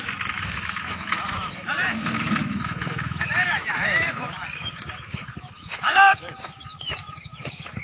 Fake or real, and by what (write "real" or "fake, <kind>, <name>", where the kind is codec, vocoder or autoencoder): fake, autoencoder, DAC-VAE